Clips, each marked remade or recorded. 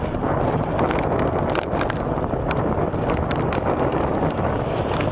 recorded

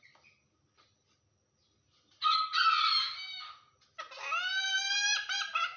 recorded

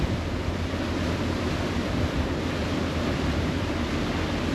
recorded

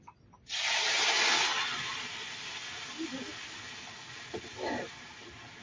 recorded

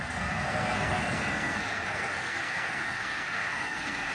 remade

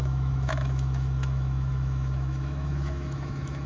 remade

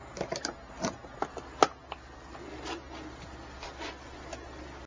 recorded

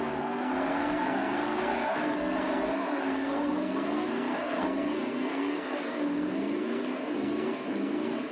remade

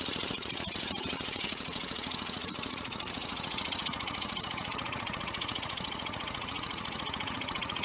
remade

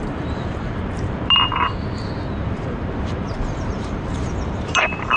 remade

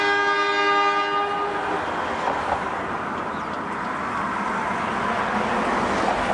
recorded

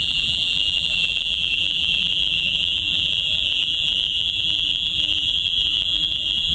remade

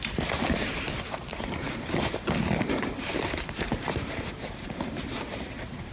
remade